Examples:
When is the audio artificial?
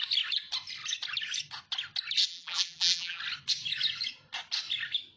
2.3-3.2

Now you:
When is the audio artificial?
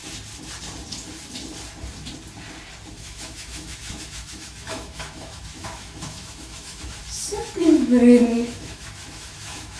2.9-7.0; 7.8-9.8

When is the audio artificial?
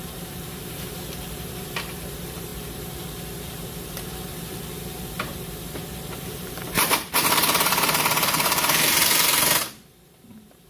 0.0-10.7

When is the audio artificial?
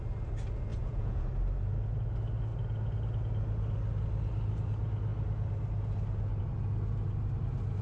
0.7-1.3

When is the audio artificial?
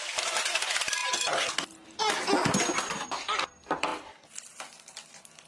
none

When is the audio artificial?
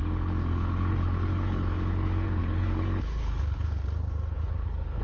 0.0-3.8; 4.3-5.0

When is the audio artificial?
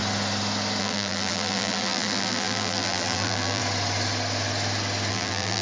0.8-3.6; 5.1-5.6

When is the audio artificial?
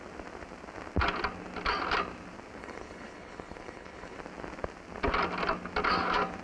2.6-4.2